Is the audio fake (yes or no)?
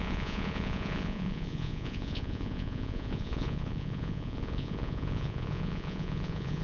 yes